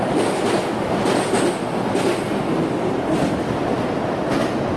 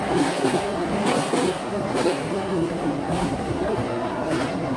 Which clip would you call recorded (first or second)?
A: first